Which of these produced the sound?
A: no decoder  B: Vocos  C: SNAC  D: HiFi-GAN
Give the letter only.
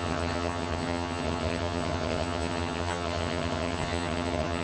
D